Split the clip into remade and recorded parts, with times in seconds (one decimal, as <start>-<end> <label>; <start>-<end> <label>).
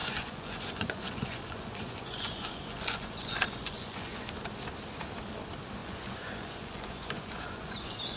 0.0-4.3 remade; 4.3-5.8 recorded; 5.8-8.2 remade